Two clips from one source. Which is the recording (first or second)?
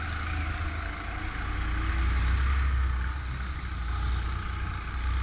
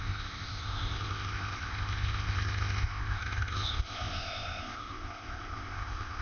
first